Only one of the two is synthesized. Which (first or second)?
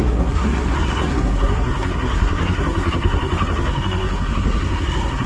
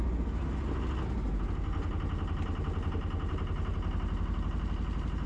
first